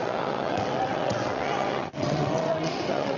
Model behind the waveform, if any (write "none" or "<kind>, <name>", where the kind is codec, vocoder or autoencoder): vocoder, WaveNeXt